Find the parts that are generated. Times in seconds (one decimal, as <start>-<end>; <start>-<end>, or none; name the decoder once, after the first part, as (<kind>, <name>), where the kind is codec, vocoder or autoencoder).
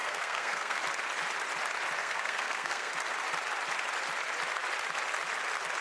0.0-0.8 (codec, SNAC); 2.0-2.9